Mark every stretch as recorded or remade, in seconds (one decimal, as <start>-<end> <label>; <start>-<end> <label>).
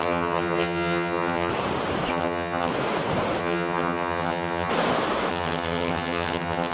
0.0-1.5 remade; 1.5-2.1 recorded; 2.1-2.7 remade; 2.7-3.4 recorded; 3.4-4.7 remade; 4.7-5.3 recorded; 5.3-6.7 remade